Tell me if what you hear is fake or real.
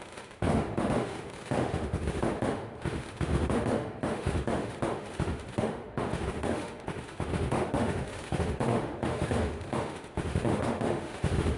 fake